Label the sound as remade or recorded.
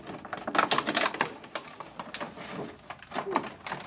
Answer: recorded